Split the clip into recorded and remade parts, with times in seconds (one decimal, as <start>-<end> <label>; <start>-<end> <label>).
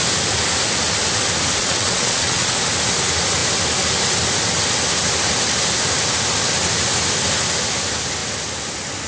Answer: 0.0-1.6 recorded; 1.6-2.5 remade; 2.5-9.1 recorded